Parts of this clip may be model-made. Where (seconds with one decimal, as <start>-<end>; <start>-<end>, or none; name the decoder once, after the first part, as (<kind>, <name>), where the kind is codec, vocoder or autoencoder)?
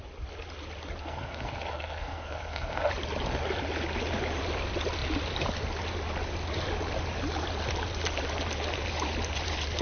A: 1.0-2.9 (codec, SNAC)